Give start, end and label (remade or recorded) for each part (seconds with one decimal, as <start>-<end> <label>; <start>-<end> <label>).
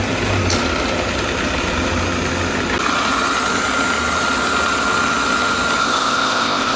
0.0-5.8 recorded; 5.8-6.8 remade